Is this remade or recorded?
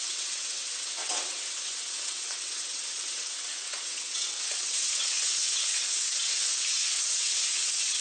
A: remade